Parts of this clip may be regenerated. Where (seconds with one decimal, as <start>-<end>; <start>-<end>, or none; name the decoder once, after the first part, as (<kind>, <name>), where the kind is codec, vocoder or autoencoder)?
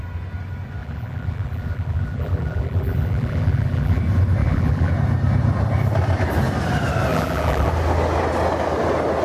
0.8-4.0 (vocoder, BigVGAN v2); 4.4-4.9; 7.1-7.7